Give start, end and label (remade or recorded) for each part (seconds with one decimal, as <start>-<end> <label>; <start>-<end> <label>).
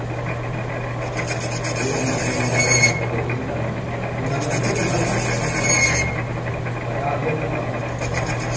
0.0-8.6 recorded